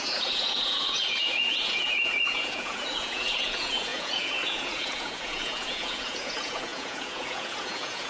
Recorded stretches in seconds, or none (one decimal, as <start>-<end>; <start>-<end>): none